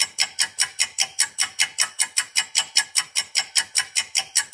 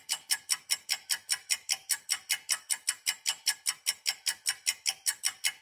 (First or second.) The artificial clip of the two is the first